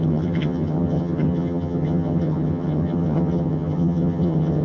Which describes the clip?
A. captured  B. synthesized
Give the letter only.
B